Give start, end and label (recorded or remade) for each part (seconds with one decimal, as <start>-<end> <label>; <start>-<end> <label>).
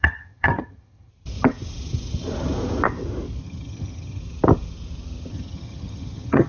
0.0-1.1 remade; 1.1-3.4 recorded; 3.4-4.2 remade; 4.2-5.3 recorded; 5.3-6.5 remade